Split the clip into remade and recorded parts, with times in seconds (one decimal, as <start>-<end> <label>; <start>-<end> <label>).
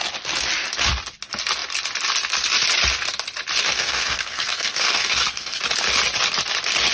0.0-3.6 recorded; 3.6-5.6 remade; 5.6-6.9 recorded